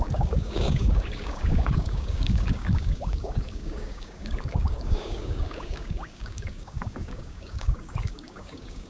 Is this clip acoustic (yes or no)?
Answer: no